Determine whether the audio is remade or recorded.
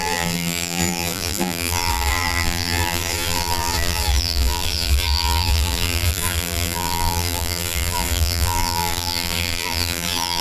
remade